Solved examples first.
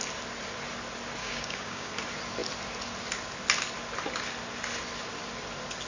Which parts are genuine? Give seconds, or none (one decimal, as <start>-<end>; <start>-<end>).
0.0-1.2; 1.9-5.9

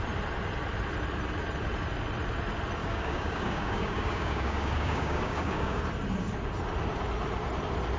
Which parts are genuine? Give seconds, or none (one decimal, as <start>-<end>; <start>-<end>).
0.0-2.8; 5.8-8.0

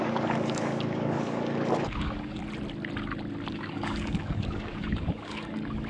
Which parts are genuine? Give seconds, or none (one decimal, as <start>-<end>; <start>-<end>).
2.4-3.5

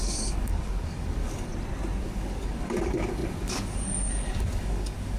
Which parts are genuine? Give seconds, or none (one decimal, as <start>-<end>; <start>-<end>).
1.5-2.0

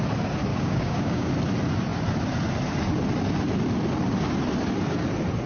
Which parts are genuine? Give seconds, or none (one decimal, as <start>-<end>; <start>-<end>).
0.0-0.5; 1.3-5.5

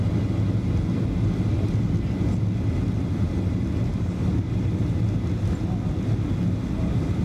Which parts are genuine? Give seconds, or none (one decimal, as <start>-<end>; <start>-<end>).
0.0-3.9; 4.5-7.2

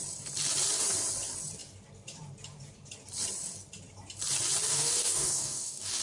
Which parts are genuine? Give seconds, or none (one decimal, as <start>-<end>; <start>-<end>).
0.0-4.7

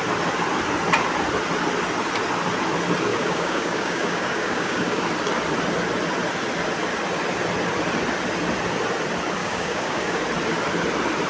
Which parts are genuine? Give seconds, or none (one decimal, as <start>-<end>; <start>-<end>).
0.0-3.1; 5.0-9.4; 10.2-11.3